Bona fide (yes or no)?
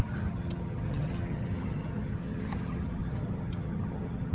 no